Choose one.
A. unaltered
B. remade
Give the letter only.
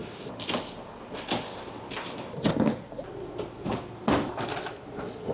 A